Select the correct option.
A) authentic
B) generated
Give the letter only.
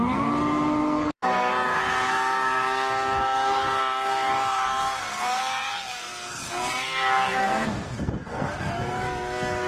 B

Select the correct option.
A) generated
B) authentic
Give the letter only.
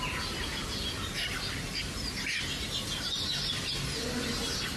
B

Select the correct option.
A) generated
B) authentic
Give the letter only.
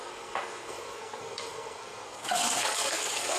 A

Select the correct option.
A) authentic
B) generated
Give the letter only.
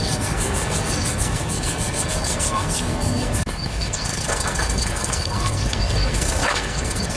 B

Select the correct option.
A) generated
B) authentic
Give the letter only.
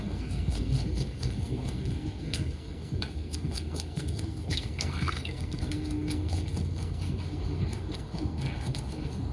A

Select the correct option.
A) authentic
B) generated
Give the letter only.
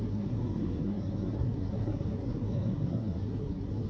B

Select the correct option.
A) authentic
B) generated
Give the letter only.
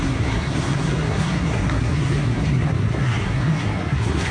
B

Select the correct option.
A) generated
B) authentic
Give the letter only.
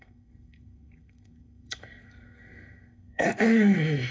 A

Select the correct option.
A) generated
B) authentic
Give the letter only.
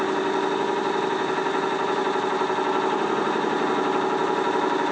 B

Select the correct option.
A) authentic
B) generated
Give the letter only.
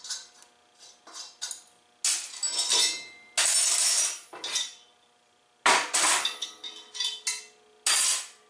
A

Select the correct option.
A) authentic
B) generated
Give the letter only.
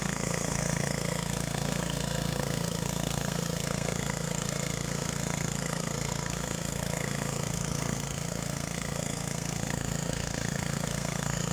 B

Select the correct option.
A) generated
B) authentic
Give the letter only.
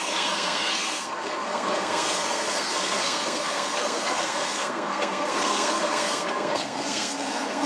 A